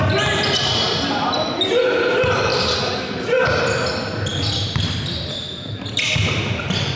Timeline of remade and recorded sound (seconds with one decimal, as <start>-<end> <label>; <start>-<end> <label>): 0.0-7.0 recorded